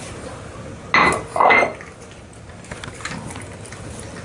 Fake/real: real